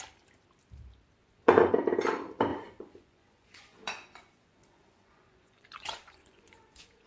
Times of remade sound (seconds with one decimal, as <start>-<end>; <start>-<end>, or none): 1.2-1.7; 2.5-7.1

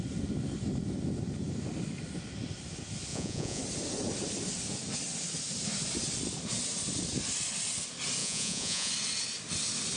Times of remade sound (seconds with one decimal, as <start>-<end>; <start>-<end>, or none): 3.1-3.6; 8.2-8.9

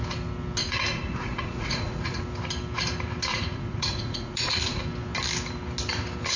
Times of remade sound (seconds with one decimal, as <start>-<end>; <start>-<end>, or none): 0.6-2.2; 3.3-4.8

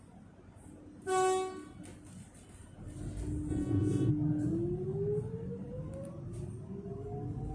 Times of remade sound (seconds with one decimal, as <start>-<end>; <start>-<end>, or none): 3.5-4.1

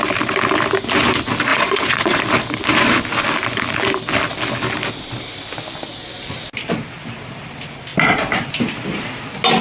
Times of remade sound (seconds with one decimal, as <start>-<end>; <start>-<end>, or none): 1.5-2.2

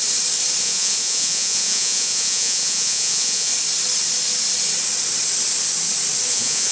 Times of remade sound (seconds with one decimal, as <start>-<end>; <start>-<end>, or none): 0.6-3.5; 6.3-6.7

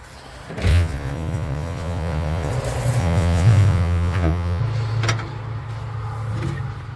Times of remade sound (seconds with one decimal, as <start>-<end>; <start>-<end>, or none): 0.7-2.5; 3.0-4.6